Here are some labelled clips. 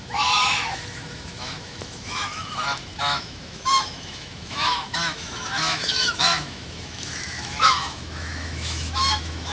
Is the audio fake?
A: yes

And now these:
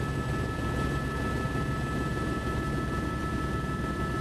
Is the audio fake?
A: no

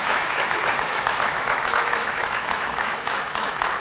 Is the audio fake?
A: yes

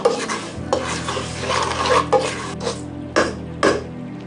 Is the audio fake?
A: no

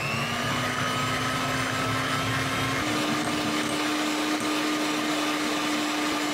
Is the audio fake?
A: no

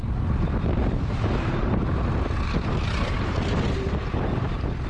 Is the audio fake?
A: no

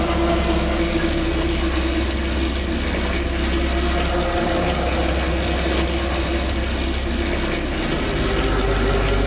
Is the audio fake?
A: no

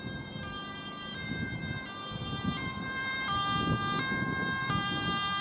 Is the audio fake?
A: no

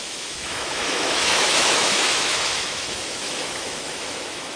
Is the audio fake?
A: yes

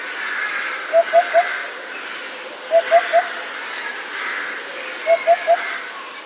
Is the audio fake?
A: no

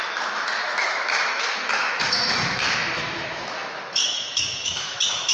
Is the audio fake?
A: yes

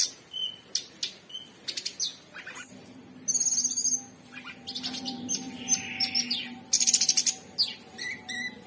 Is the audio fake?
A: no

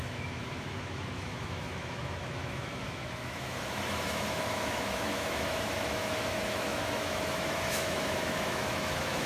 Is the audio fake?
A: yes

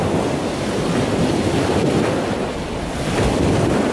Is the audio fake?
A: no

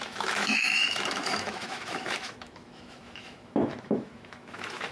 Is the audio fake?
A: yes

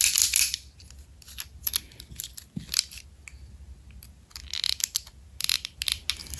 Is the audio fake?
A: no